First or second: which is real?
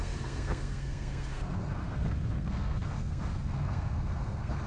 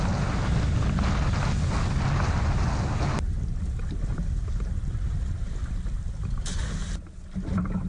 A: second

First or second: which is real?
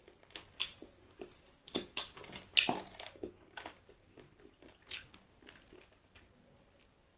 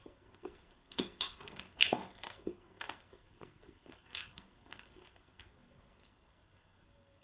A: first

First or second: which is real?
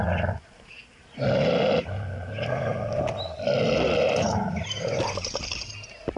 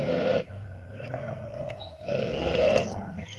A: first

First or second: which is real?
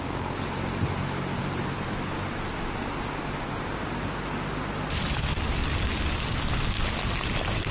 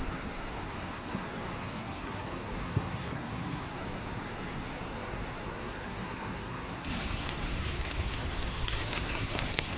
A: first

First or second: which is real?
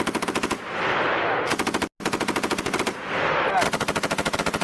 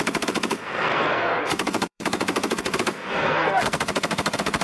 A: first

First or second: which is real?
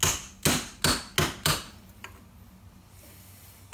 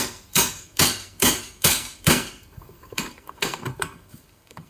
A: first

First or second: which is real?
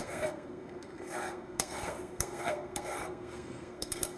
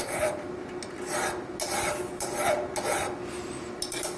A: second